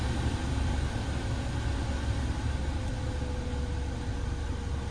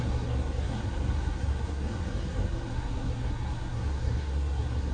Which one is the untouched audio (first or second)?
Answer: first